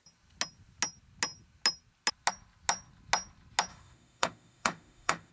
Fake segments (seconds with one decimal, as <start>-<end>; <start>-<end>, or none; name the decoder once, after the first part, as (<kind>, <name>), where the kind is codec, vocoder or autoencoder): 3.7-5.3 (autoencoder, DAC-VAE)